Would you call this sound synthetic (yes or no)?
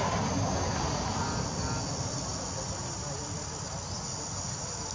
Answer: no